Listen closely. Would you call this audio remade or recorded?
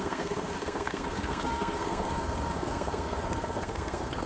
remade